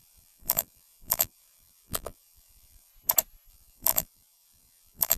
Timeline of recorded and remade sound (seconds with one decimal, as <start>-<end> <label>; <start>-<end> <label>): 0.0-2.9 remade; 2.9-3.5 recorded; 3.5-5.2 remade